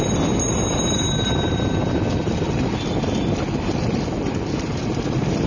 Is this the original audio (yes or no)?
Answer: yes